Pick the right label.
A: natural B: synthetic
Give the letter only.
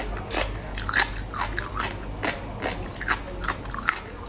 A